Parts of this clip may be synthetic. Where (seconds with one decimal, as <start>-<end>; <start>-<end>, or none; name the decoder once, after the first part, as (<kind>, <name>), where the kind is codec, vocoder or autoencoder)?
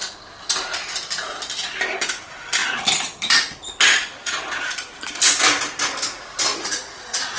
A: 6.5-7.4 (vocoder, Vocos)